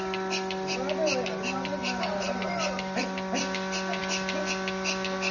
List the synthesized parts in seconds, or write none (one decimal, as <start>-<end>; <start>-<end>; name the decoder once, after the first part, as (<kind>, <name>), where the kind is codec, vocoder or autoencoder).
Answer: none